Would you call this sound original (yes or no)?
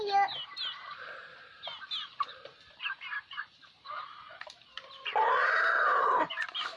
no